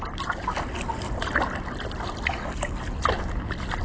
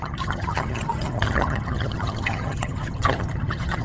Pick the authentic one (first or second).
first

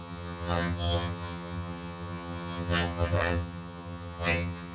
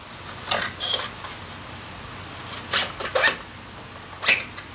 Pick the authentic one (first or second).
second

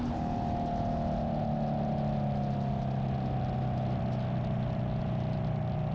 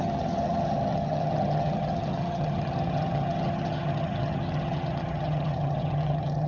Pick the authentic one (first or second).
first